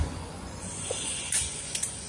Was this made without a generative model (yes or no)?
no